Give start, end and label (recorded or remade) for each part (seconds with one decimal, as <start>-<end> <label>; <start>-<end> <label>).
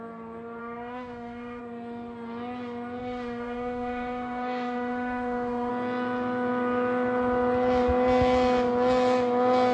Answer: 0.0-0.6 recorded; 0.6-1.6 remade; 1.6-3.0 recorded; 3.0-5.7 remade; 5.7-9.7 recorded